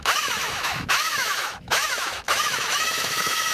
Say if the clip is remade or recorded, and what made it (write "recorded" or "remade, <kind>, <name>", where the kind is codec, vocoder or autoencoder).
remade, autoencoder, DAC-VAE